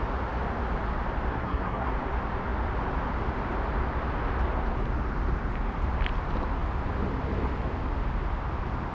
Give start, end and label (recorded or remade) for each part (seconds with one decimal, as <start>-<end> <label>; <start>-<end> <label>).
0.0-1.3 recorded; 1.3-1.9 remade; 1.9-8.9 recorded